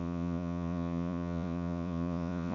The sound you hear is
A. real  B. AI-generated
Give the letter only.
B